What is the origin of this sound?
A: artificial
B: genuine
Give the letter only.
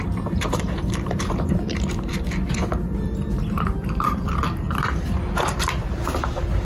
A